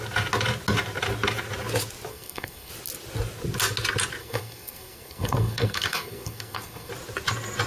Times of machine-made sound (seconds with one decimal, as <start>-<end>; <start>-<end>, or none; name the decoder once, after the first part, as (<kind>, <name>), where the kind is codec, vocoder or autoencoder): 2.1-2.7 (codec, SNAC); 4.2-6.9